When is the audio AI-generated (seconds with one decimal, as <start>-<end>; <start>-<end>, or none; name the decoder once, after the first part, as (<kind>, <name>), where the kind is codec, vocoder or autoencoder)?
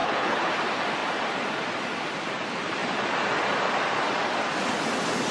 0.0-0.5 (codec, HILCodec)